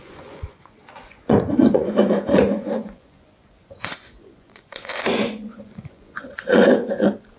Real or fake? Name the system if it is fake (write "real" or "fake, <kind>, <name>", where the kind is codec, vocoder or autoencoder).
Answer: fake, vocoder, Vocos